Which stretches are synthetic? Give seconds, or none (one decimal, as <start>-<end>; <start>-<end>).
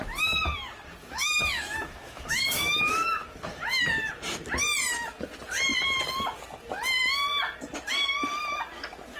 1.0-3.8